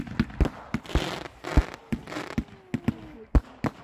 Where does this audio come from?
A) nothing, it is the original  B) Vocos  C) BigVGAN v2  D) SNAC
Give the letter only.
A